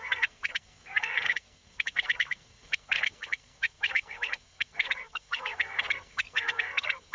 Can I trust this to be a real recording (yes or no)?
no